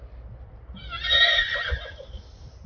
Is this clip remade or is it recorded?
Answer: recorded